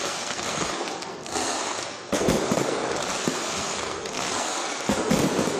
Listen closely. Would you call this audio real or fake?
fake